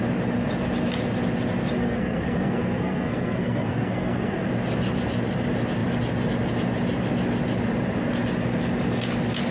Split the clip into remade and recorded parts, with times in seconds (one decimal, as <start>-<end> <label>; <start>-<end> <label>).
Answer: 0.0-1.8 recorded; 1.8-4.5 remade; 4.5-9.5 recorded